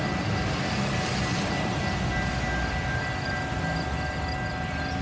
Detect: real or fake real